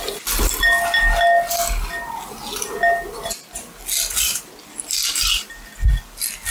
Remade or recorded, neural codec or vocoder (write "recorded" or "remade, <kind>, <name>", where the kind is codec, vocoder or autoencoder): recorded